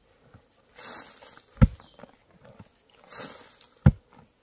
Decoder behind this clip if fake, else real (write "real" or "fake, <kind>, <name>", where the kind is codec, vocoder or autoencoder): real